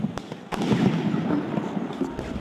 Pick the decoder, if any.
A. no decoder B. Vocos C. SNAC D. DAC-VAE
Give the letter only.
A